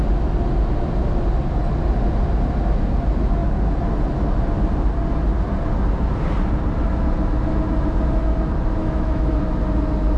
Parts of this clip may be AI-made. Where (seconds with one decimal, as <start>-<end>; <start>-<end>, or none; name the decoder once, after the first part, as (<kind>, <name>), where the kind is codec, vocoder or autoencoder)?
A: 8.8-9.3 (autoencoder, DAC-VAE)